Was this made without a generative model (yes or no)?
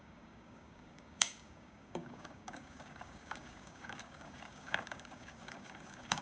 no